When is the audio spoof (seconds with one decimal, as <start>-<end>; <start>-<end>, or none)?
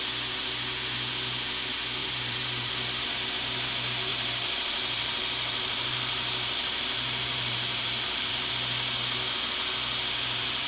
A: 2.0-2.7; 4.1-8.5